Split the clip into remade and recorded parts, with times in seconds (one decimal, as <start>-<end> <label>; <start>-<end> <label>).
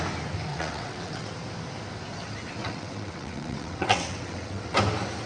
0.0-0.5 recorded; 0.5-1.3 remade; 1.3-2.6 recorded; 2.6-4.8 remade; 4.8-5.3 recorded